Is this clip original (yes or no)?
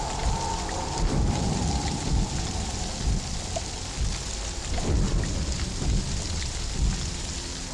yes